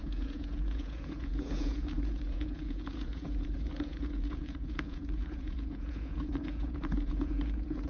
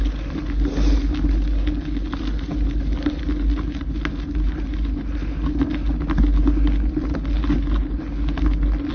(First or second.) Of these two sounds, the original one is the second